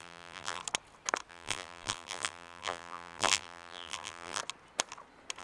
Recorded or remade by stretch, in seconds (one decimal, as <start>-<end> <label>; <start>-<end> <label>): 0.0-0.6 remade; 0.6-1.3 recorded; 1.3-4.4 remade; 4.4-5.4 recorded